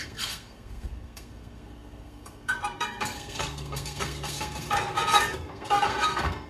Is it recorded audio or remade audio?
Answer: remade